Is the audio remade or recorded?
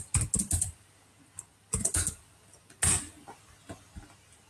recorded